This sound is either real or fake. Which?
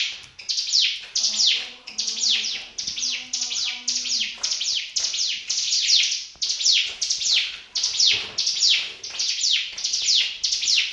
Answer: real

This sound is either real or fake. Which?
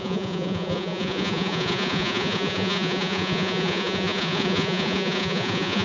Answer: fake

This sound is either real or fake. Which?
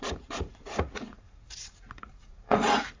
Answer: fake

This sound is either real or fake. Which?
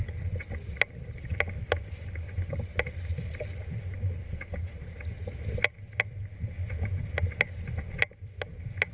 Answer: real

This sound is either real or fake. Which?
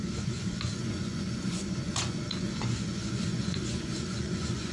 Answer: fake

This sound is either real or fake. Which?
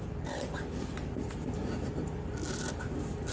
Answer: real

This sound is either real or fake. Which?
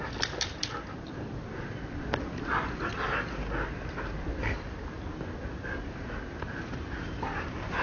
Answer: real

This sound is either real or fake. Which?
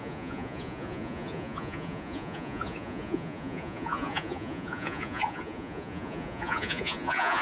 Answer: fake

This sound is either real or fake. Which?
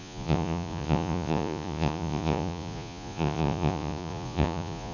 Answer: fake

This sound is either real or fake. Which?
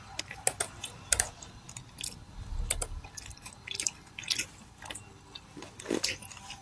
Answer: real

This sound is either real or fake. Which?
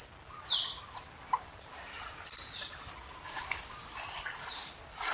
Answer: real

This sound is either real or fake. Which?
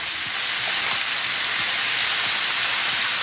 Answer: real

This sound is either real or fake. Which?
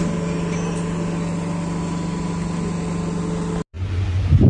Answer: real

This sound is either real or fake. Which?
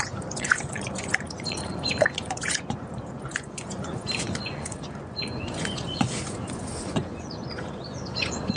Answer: fake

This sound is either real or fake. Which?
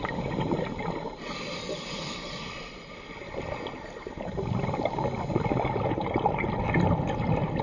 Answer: real